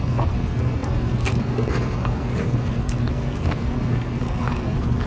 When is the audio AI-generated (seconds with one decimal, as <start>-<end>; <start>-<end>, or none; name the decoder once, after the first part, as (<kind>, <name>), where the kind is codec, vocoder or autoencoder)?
0.0-5.1 (codec, SNAC)